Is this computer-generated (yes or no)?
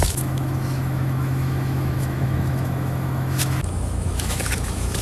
yes